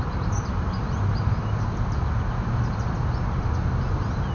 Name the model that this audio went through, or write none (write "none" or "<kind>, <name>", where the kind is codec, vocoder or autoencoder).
none